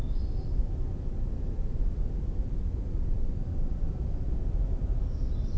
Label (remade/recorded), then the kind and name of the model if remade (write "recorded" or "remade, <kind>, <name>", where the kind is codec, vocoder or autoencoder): recorded